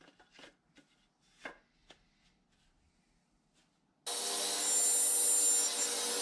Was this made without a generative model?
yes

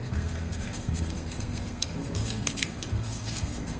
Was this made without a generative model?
no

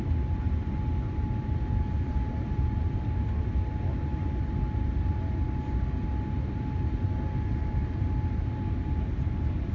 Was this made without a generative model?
yes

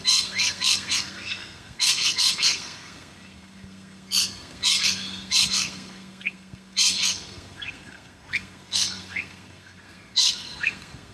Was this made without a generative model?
no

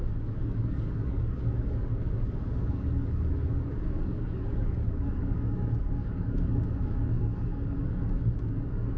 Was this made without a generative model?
no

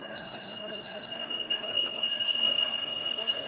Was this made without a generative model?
no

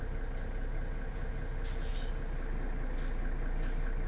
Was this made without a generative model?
yes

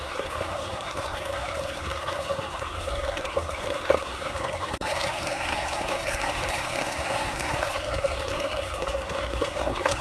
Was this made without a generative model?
no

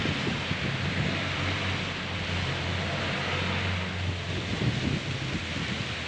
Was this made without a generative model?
yes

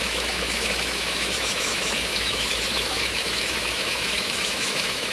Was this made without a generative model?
no